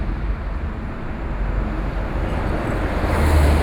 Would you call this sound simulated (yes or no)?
no